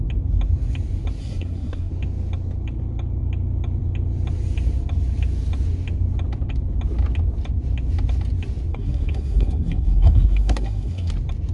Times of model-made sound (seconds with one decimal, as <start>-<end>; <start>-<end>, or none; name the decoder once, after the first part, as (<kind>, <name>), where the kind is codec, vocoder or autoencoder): 1.2-1.9 (codec, SNAC); 8.7-11.1